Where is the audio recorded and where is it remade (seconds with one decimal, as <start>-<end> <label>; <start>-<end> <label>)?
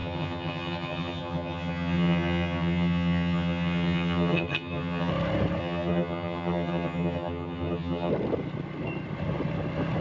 0.0-5.1 remade; 5.1-5.6 recorded; 5.6-8.1 remade; 8.1-10.0 recorded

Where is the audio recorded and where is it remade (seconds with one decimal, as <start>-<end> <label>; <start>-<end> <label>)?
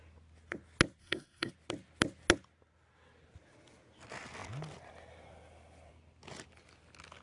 0.0-1.0 recorded; 1.0-1.5 remade; 1.5-7.2 recorded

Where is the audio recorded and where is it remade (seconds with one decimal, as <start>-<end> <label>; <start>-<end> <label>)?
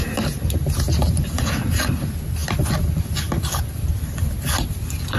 0.0-5.2 recorded